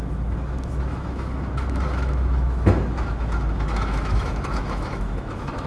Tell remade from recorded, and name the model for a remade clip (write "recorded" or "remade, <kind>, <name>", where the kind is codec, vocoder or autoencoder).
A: remade, autoencoder, DAC-VAE